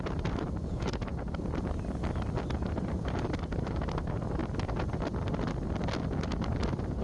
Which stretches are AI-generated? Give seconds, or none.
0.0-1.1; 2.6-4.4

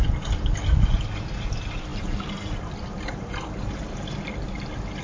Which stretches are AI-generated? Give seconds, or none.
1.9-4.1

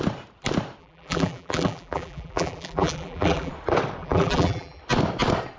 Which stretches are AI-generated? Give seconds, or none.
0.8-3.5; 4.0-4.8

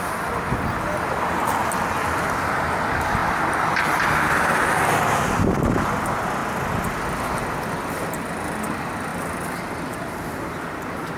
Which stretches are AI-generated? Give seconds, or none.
none

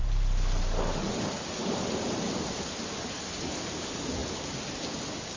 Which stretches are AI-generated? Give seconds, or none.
0.0-1.1; 1.6-3.4

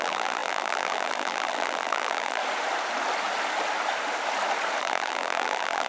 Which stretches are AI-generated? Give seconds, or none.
0.0-2.4; 4.8-5.9

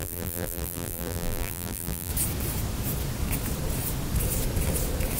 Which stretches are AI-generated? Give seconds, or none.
0.0-2.1

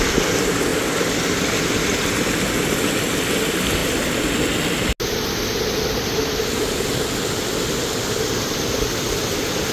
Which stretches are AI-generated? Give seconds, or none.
none